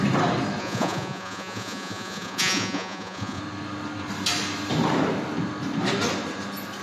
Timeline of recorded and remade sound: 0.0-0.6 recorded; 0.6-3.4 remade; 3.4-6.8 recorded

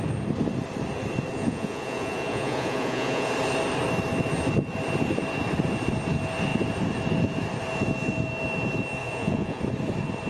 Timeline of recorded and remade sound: 0.0-1.4 recorded; 1.4-3.3 remade; 3.3-9.0 recorded; 9.0-9.6 remade; 9.6-10.3 recorded

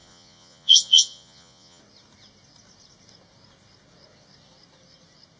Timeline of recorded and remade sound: 0.0-1.8 remade; 1.8-5.4 recorded

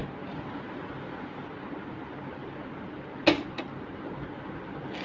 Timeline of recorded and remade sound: 0.0-5.0 recorded

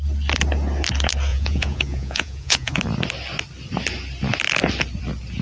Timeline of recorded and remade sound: 0.0-1.3 recorded; 1.3-2.8 remade; 2.8-5.4 recorded

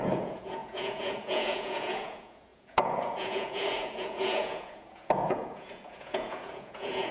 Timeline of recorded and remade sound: 0.0-7.1 remade

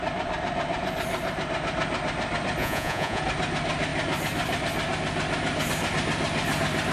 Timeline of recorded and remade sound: 0.0-2.6 recorded; 2.6-3.2 remade; 3.2-6.9 recorded